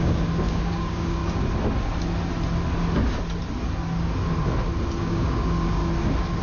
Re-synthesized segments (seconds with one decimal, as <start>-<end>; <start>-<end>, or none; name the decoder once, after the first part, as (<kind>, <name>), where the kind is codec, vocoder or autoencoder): 0.0-1.2 (codec, DAC); 5.0-5.8